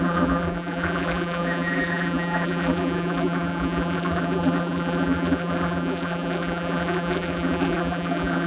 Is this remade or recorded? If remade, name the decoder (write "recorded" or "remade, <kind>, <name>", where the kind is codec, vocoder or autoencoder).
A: remade, vocoder, BigVGAN v2